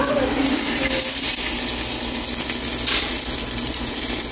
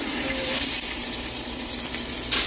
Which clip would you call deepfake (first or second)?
second